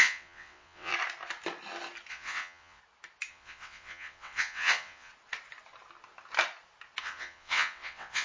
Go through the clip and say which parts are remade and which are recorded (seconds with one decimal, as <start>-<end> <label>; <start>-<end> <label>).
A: 0.0-0.9 remade; 0.9-2.1 recorded; 2.1-2.8 remade; 2.8-3.3 recorded; 3.3-5.1 remade; 5.1-7.0 recorded; 7.0-8.2 remade